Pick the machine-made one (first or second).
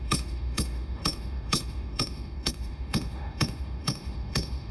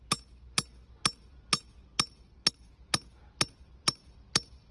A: first